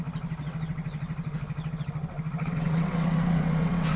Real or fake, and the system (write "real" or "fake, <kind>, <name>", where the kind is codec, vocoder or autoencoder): fake, vocoder, WaveNeXt